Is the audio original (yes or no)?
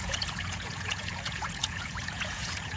no